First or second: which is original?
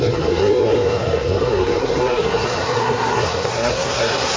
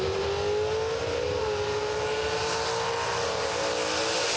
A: second